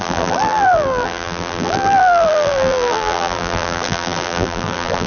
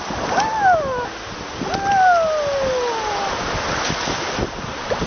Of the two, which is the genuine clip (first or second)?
second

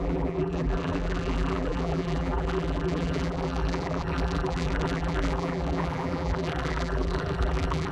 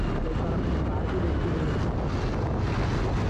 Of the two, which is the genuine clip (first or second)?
second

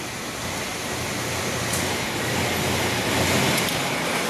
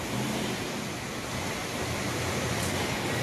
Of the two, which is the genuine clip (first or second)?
first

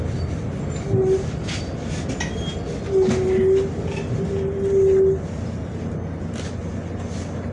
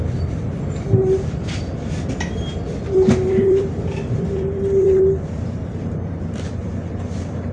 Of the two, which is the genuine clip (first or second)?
first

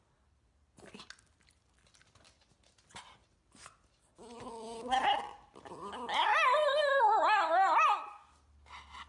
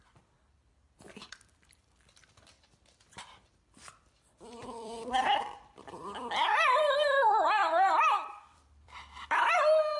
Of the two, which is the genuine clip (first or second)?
first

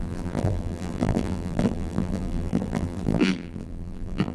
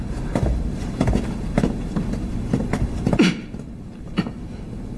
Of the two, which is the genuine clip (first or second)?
second